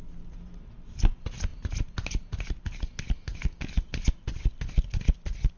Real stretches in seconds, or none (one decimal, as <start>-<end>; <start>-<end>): 0.0-5.6